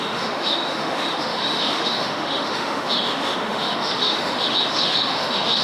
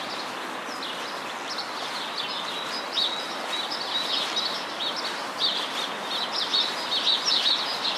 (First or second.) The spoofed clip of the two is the first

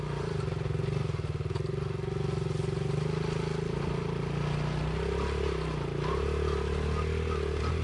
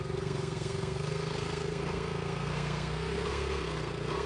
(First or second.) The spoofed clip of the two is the second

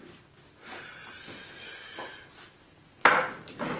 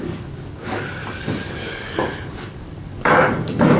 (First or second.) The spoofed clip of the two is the second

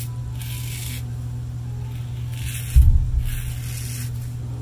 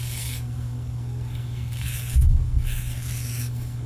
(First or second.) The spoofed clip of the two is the second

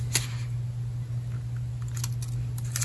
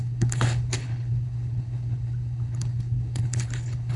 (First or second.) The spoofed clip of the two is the second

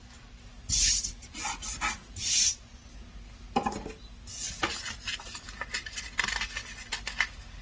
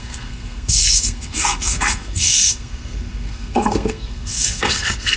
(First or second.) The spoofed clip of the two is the second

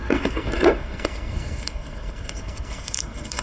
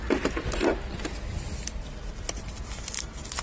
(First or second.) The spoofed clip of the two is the first